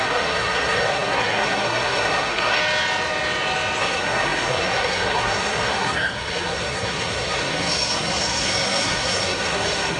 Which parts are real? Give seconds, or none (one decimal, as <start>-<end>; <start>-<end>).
2.6-3.8